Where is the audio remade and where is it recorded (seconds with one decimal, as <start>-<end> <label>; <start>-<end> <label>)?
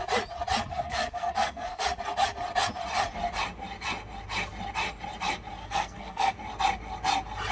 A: 0.0-0.7 recorded; 0.7-1.8 remade; 1.8-5.6 recorded; 5.6-6.3 remade; 6.3-7.5 recorded